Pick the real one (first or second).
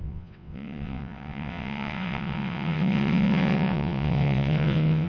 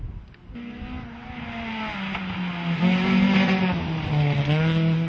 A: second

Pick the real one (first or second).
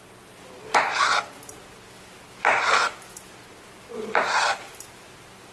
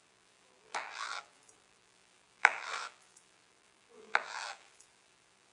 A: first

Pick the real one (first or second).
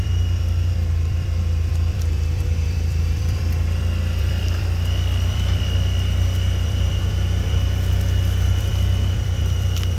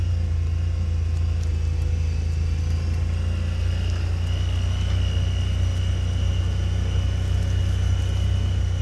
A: second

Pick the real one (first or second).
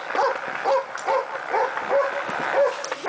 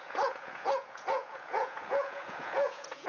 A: first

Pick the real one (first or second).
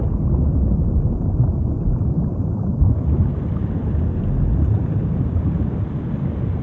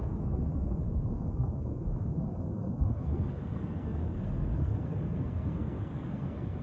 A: first